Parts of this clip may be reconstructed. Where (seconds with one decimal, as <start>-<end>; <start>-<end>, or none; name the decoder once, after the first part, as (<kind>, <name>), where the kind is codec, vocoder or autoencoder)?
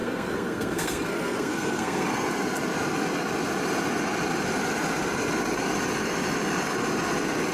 0.0-2.1 (codec, SNAC)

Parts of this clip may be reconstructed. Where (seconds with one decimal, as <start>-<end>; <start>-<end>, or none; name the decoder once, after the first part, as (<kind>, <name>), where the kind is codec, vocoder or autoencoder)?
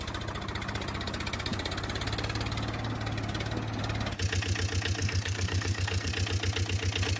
5.0-6.1 (codec, SNAC)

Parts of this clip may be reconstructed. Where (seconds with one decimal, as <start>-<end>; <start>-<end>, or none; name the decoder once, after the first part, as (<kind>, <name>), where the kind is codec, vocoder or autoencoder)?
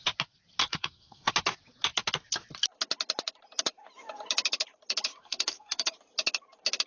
0.6-1.3 (codec, SNAC); 5.2-5.9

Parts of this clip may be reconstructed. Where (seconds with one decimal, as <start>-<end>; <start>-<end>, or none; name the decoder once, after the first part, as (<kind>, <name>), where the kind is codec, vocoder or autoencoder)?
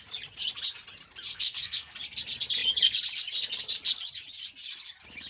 1.3-1.9 (codec, SNAC)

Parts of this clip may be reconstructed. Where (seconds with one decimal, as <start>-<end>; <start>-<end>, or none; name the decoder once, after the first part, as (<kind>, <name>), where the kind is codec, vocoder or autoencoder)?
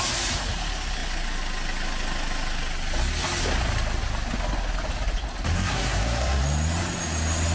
5.5-6.4 (codec, SNAC)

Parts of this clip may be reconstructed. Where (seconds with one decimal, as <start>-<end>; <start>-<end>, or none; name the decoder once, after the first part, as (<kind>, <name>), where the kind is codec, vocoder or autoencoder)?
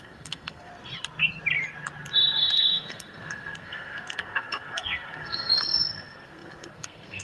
0.0-0.7 (codec, SNAC); 2.4-7.2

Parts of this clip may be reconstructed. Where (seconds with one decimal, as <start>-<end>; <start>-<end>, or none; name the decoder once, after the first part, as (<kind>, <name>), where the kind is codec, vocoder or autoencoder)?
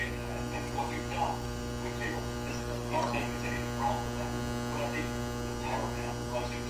2.6-3.2 (codec, SNAC)